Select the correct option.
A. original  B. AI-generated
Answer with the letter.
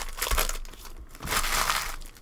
A